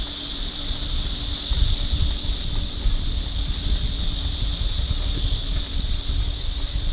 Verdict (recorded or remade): recorded